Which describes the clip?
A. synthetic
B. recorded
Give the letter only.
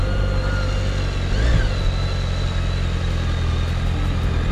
B